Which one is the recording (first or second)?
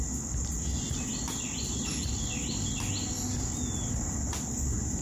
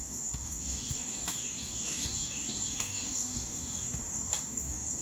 first